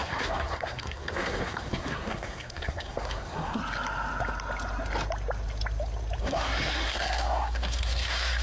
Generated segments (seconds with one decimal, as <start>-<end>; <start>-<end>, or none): 0.0-3.6; 6.2-8.4